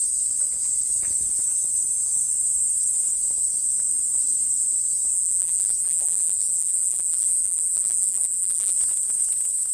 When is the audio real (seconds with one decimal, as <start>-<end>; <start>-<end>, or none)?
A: 0.0-5.1; 8.8-9.7